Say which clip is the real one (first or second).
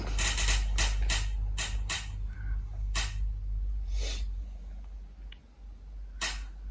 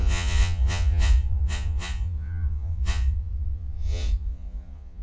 first